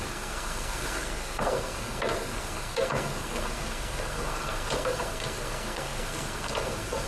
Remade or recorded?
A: remade